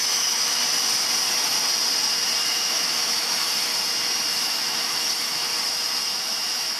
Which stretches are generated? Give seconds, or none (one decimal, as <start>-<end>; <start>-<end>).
0.0-0.6; 2.4-3.7; 4.3-5.5; 6.1-6.8

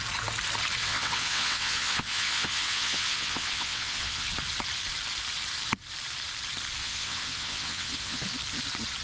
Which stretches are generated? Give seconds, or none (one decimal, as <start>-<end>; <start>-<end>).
0.8-4.3; 6.8-8.2

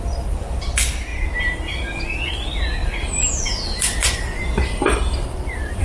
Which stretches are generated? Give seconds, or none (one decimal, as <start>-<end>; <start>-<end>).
2.8-5.8